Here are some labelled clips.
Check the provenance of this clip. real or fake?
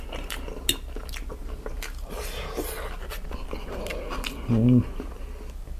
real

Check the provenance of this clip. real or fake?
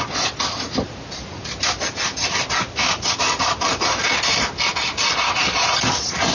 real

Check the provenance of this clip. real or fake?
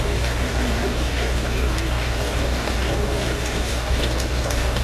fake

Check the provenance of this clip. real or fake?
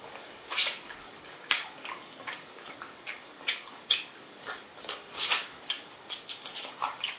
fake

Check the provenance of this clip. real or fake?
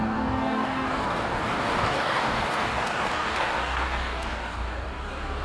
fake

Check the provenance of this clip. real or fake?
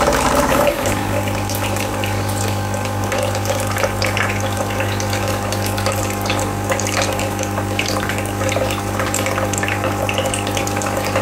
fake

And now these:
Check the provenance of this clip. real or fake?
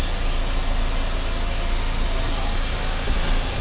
real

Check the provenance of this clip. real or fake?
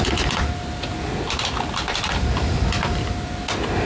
real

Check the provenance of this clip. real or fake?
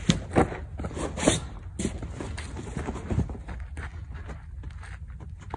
real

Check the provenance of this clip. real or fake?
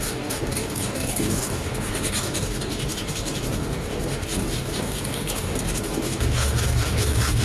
fake